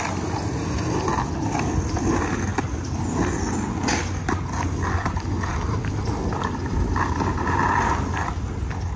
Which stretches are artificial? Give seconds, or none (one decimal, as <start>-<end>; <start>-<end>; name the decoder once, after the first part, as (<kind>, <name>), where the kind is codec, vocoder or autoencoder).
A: none